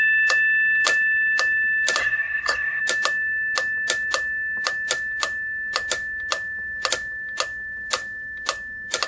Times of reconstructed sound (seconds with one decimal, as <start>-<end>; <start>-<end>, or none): 2.0-2.8